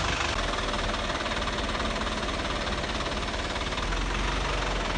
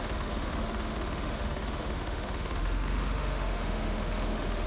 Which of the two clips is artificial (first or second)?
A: second